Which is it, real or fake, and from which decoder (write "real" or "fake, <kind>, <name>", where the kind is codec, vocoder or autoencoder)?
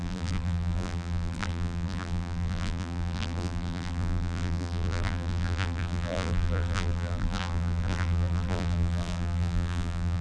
fake, vocoder, BigVGAN v2